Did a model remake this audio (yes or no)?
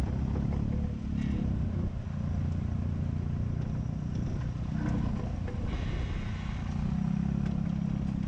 no